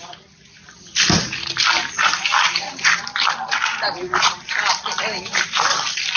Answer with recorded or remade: remade